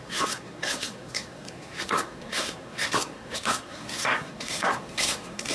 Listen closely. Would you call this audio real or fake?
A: fake